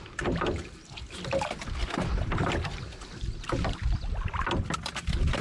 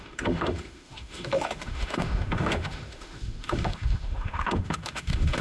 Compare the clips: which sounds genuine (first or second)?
first